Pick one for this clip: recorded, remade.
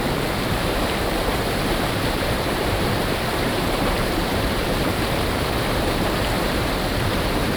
remade